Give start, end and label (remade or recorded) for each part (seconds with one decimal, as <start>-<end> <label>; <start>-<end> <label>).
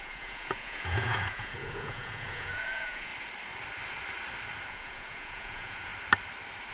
0.0-3.1 remade; 3.1-4.7 recorded; 4.7-5.9 remade; 5.9-6.7 recorded